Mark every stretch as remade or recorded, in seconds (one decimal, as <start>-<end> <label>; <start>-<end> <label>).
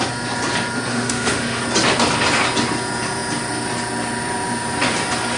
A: 0.0-0.9 recorded; 0.9-1.6 remade; 1.6-5.4 recorded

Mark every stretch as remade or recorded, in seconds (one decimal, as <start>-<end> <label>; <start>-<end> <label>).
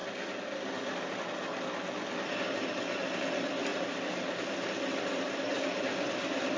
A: 0.0-1.2 remade; 1.2-3.7 recorded; 3.7-4.3 remade; 4.3-6.6 recorded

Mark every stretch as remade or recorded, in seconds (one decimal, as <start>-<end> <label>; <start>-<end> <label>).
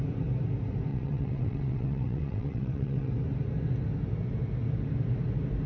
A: 0.0-0.9 recorded; 0.9-3.1 remade; 3.1-5.7 recorded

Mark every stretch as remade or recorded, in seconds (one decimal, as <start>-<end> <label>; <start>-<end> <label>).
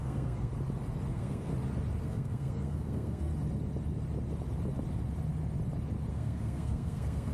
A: 0.0-0.5 remade; 0.5-1.1 recorded; 1.1-1.5 remade; 1.5-2.0 recorded; 2.0-3.3 remade; 3.3-6.1 recorded; 6.1-7.3 remade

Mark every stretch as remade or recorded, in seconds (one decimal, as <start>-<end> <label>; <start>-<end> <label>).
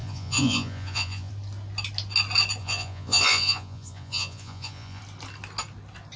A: 0.0-1.3 remade; 1.3-2.6 recorded; 2.6-5.0 remade; 5.0-6.2 recorded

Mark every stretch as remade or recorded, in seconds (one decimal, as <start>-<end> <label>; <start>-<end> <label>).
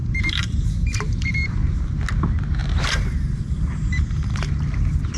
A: 0.0-2.0 remade; 2.0-2.6 recorded; 2.6-4.5 remade; 4.5-5.2 recorded